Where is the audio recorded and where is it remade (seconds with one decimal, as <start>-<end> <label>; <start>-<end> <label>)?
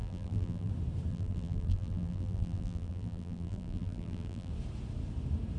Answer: 0.0-0.7 remade; 0.7-1.1 recorded; 1.1-4.5 remade; 4.5-5.6 recorded